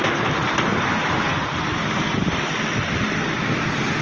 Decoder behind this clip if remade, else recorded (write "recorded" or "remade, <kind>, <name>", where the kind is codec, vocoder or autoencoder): recorded